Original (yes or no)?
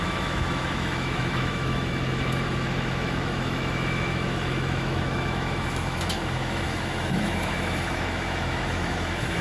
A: no